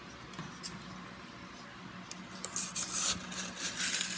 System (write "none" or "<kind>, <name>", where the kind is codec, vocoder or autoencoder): none